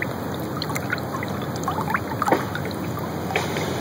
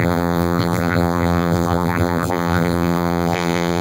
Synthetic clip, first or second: second